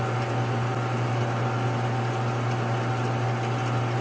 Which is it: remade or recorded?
recorded